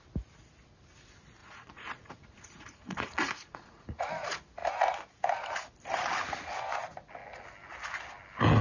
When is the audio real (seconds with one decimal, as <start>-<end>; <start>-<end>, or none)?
0.0-1.4; 4.1-8.6